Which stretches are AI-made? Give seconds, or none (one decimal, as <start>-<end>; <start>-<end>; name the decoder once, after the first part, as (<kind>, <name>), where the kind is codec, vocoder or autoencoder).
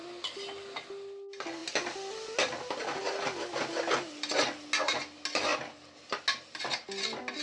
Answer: none